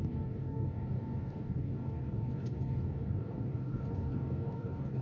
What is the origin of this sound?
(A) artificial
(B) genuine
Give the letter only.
A